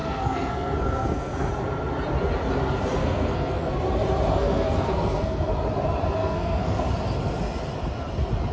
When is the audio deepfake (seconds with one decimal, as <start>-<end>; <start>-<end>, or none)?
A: 0.0-1.5; 3.0-3.7; 4.3-5.5; 6.2-6.8